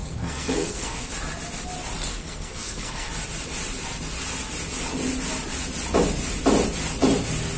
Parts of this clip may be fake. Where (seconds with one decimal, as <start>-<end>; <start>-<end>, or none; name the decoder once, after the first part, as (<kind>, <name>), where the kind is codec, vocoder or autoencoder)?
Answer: 0.0-1.1 (codec, SNAC); 2.1-3.1